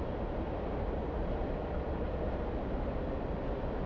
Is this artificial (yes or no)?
no